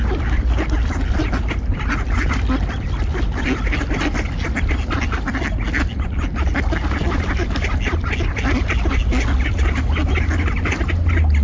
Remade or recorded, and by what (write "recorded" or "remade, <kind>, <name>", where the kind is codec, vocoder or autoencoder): recorded